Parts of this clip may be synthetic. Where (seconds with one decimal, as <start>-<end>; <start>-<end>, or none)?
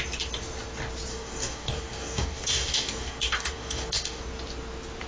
1.1-4.2